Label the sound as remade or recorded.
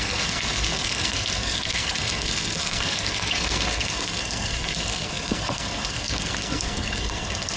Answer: remade